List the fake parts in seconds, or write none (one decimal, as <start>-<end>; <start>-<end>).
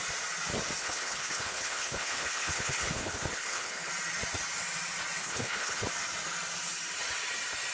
0.8-3.9; 5.2-5.8